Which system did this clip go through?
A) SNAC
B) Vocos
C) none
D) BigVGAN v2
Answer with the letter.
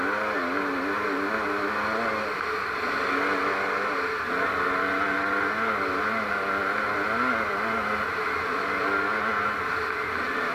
C